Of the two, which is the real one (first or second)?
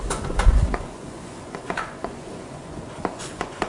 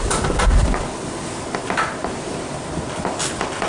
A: second